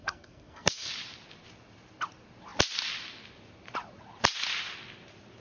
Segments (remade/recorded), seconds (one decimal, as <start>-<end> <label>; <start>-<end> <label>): 0.0-0.9 remade; 0.9-5.4 recorded